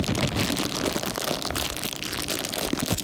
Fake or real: real